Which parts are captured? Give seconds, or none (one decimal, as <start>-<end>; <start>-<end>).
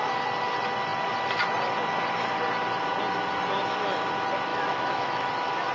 0.0-4.5; 5.3-5.7